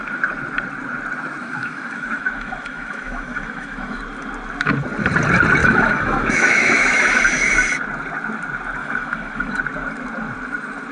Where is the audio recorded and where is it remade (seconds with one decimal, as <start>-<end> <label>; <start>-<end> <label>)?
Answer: 0.0-1.4 recorded; 1.4-4.0 remade; 4.0-5.6 recorded; 5.6-7.2 remade; 7.2-8.8 recorded; 8.8-9.6 remade; 9.6-10.9 recorded